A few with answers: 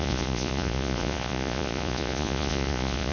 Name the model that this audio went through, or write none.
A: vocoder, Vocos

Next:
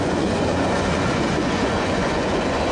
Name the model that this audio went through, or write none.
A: vocoder, Vocos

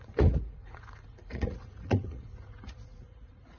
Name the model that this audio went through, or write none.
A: vocoder, Vocos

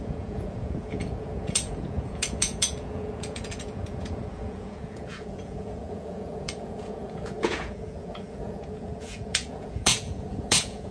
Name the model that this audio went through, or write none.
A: vocoder, Vocos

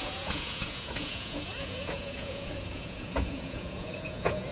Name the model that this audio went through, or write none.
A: vocoder, Vocos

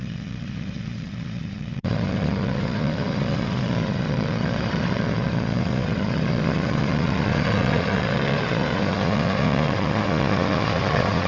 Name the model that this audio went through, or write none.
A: vocoder, Vocos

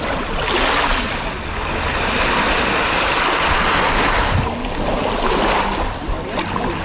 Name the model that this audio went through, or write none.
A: none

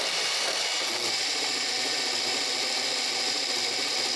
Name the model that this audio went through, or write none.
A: none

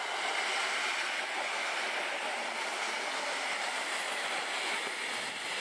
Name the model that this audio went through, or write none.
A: none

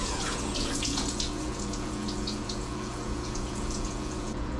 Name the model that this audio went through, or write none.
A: vocoder, Vocos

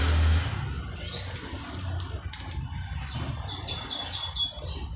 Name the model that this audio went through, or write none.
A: none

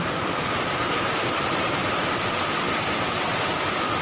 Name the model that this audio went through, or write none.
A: none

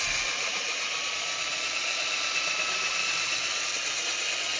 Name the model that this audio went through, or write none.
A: none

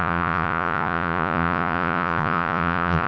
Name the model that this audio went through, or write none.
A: vocoder, Vocos